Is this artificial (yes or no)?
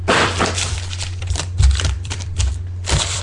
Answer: yes